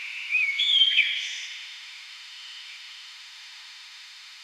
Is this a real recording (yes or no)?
no